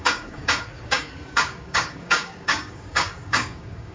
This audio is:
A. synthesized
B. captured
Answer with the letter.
A